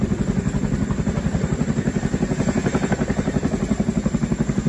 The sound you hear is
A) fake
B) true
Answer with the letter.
A